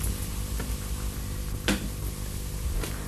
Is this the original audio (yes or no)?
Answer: yes